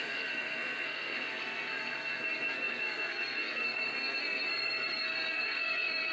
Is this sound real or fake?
fake